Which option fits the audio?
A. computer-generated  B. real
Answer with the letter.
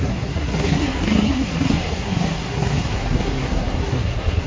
A